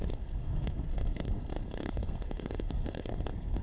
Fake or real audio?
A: fake